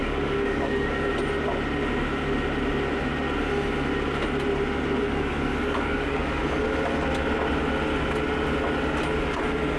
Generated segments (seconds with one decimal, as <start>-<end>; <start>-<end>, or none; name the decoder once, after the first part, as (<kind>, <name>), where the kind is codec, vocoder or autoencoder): 0.0-1.1 (codec, DAC); 5.0-6.4